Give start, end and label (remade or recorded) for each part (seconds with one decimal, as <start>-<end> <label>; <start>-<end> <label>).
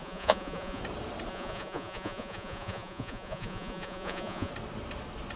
0.0-0.8 remade; 0.8-1.3 recorded; 1.3-4.5 remade; 4.5-5.4 recorded